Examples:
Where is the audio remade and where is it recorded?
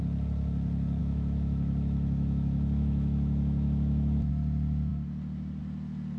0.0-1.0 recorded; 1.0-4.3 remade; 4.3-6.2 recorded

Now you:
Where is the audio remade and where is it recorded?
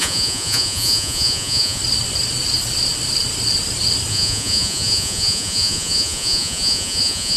0.0-1.8 remade; 1.8-4.1 recorded; 4.1-7.4 remade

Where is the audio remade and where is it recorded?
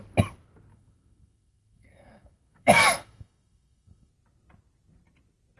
0.0-0.7 recorded; 0.7-4.1 remade; 4.1-5.6 recorded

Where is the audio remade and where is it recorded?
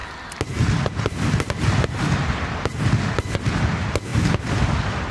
0.0-5.1 recorded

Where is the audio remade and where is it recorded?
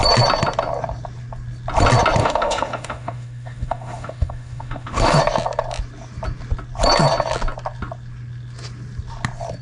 0.0-2.2 recorded; 2.2-5.2 remade; 5.2-9.6 recorded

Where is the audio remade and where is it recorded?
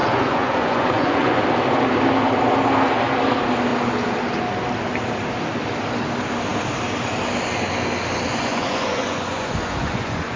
0.0-1.4 remade; 1.4-8.3 recorded; 8.3-10.4 remade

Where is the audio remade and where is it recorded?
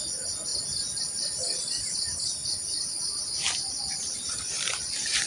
0.0-5.3 recorded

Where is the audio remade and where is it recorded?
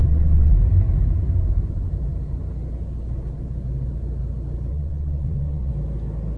0.0-0.5 remade; 0.5-4.7 recorded; 4.7-5.7 remade; 5.7-6.4 recorded